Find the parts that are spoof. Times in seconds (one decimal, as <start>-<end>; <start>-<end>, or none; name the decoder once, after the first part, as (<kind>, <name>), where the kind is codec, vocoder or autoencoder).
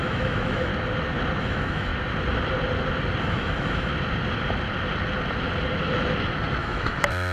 0.0-0.7 (autoencoder, DAC-VAE); 1.4-1.9; 3.2-3.9; 6.6-7.3